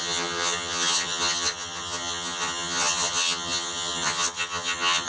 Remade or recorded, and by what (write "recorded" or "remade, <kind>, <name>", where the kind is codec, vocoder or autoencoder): remade, vocoder, HiFi-GAN